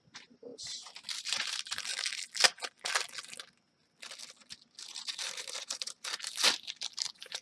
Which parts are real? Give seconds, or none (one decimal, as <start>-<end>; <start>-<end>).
0.5-1.2; 1.9-4.6